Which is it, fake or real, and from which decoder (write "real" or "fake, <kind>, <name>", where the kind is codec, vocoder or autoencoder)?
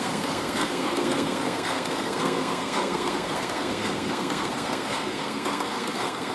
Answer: fake, codec, SNAC